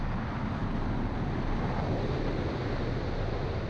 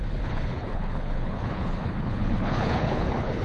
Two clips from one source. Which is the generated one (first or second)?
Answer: second